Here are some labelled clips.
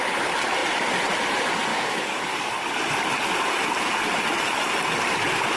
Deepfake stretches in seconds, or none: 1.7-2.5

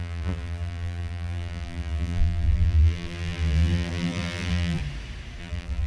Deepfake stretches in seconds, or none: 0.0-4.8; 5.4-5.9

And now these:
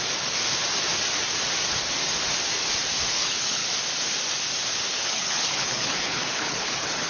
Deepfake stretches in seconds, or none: 3.1-3.6; 4.9-7.1